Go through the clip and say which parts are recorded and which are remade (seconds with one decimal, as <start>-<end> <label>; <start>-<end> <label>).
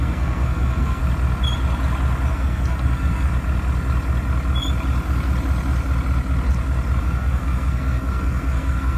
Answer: 0.0-1.0 remade; 1.0-2.3 recorded; 2.3-3.3 remade; 3.3-7.0 recorded; 7.0-9.0 remade